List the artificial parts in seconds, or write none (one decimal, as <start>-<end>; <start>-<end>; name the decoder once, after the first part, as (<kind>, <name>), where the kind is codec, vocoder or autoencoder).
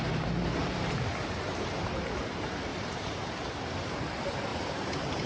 0.6-2.2 (vocoder, BigVGAN v2); 2.7-4.0; 4.5-5.3